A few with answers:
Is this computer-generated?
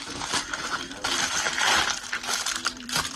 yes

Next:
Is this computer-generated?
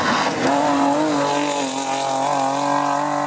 no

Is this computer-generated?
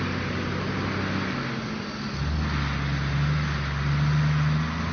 no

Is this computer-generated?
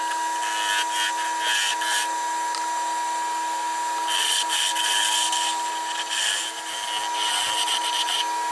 no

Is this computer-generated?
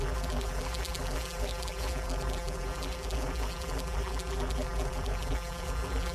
yes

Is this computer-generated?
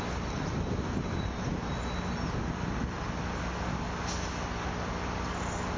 no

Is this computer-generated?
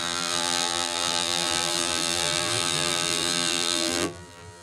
yes